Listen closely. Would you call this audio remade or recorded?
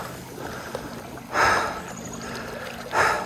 recorded